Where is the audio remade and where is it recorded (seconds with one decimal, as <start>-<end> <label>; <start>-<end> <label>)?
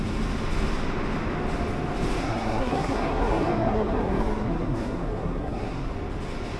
0.0-2.2 recorded; 2.2-5.9 remade; 5.9-6.6 recorded